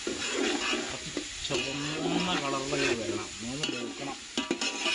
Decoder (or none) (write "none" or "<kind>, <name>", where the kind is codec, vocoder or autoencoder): none